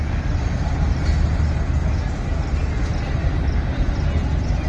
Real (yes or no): yes